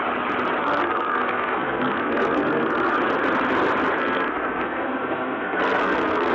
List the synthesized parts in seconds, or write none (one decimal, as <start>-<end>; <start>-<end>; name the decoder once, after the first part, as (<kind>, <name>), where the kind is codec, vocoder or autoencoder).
0.6-2.9 (codec, SNAC); 4.0-6.3